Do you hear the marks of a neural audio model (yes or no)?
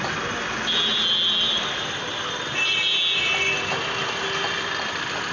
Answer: no